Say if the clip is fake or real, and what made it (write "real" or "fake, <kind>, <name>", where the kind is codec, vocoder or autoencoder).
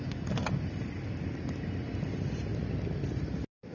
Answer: real